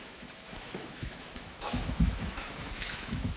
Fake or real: fake